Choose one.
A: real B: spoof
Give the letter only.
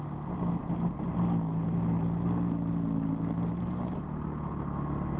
A